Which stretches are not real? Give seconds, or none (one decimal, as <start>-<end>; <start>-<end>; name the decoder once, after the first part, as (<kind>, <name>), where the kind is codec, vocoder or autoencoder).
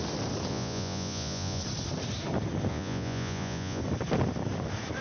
0.5-1.6 (vocoder, Vocos); 2.7-3.8